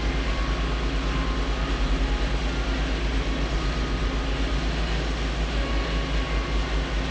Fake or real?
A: real